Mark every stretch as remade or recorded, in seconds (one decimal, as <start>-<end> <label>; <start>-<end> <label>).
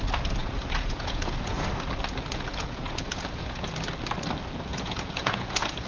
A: 0.0-0.4 recorded; 0.4-1.7 remade; 1.7-2.5 recorded; 2.5-3.7 remade; 3.7-4.7 recorded; 4.7-5.9 remade